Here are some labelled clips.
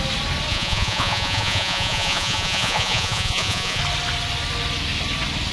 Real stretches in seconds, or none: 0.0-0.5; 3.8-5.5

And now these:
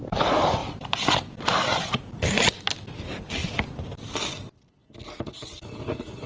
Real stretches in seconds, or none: 3.4-4.2; 4.8-6.3

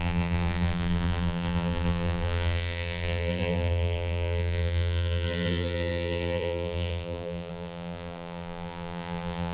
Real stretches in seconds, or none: none

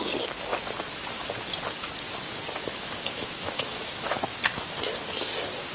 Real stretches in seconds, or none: 0.0-2.6; 4.2-5.7

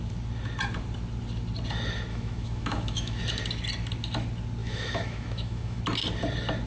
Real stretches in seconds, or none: 0.0-2.1; 3.2-4.6; 5.8-6.7